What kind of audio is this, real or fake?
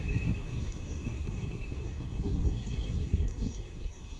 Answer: fake